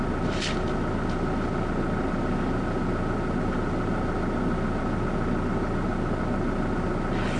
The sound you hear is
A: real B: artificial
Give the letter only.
A